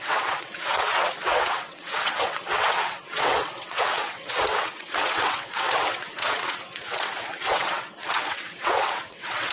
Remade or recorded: remade